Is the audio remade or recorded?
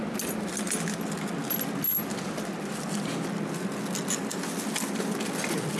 recorded